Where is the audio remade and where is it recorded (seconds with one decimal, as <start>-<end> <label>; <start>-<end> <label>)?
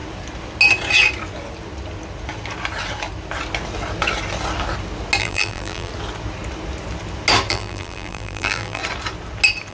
0.0-5.2 recorded; 5.2-5.9 remade; 5.9-7.5 recorded; 7.5-8.8 remade; 8.8-9.7 recorded